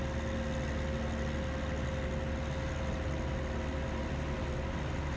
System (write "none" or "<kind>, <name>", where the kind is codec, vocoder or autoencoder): none